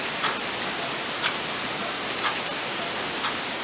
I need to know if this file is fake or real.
real